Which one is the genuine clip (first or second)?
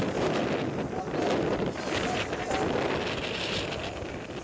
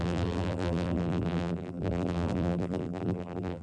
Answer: first